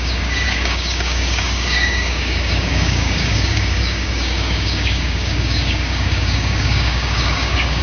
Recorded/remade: remade